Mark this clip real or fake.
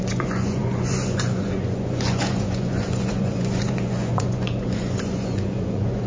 fake